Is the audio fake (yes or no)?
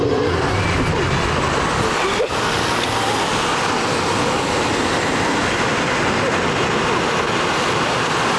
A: no